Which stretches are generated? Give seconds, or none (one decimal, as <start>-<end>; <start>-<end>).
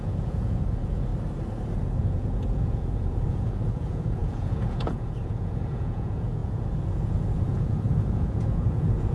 0.0-1.1; 2.0-9.1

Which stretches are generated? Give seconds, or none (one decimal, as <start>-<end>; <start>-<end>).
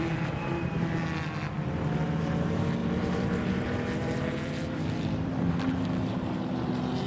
2.8-5.6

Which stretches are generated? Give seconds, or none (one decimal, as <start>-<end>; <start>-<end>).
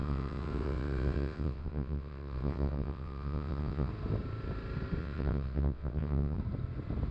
0.0-3.9; 5.0-6.4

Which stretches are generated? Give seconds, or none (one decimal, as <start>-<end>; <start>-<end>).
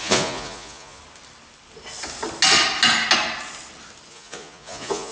0.0-1.0; 4.1-5.1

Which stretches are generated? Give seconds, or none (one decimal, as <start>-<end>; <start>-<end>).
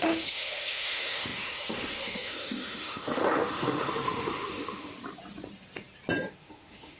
0.0-4.9; 6.3-7.0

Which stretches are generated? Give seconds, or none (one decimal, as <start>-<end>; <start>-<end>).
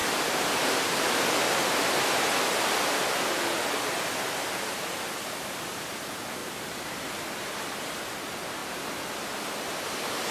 0.0-0.7; 6.4-7.1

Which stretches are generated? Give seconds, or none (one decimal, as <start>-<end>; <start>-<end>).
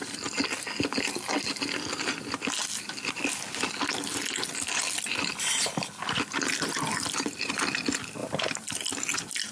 8.2-8.7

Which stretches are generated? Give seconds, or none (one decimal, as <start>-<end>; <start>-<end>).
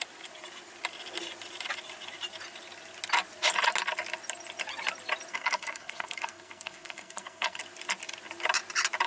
5.3-7.6